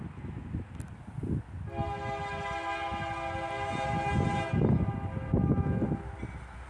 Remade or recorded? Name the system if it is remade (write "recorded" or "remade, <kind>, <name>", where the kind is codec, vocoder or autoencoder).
recorded